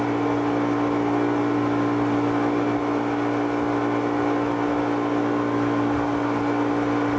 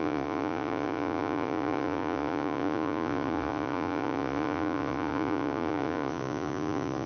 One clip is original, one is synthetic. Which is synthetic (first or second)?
second